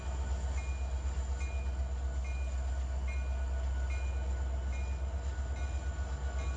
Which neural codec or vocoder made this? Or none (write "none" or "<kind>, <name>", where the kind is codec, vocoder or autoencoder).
none